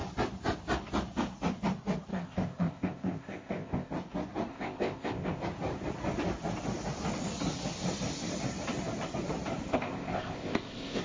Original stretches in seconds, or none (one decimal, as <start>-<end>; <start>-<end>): 0.0-2.1; 3.9-4.5; 5.4-9.7